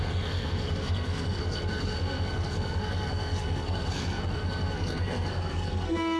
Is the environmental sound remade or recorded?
remade